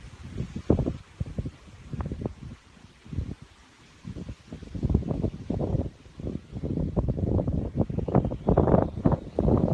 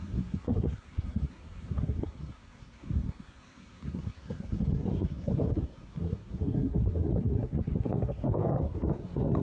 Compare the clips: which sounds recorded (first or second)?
first